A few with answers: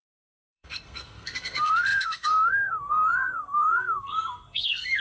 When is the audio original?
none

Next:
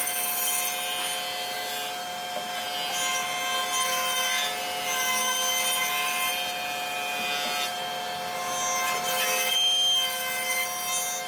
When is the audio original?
0.0-11.3